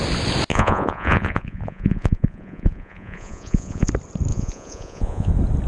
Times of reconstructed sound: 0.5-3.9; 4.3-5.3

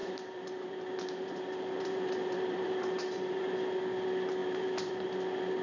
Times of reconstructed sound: 0.0-3.4; 4.4-4.9

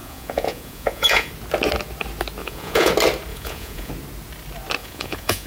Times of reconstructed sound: 0.0-1.3; 2.4-2.9; 3.3-3.9; 4.8-5.5

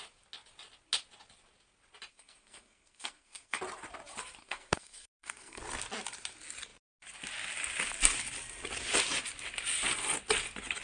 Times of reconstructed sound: 2.1-3.6; 4.4-5.6